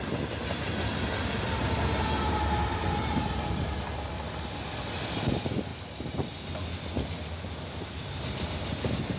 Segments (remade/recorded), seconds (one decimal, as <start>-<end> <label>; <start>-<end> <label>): 0.0-9.2 recorded